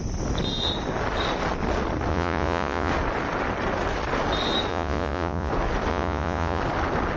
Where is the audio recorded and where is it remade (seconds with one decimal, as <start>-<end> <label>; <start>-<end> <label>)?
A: 0.0-2.1 recorded; 2.1-2.9 remade; 2.9-4.7 recorded; 4.7-5.5 remade; 5.5-5.9 recorded; 5.9-6.6 remade; 6.6-7.2 recorded